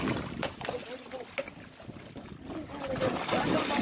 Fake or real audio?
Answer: real